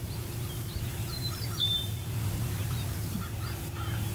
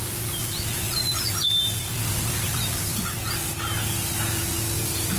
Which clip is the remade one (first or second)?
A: first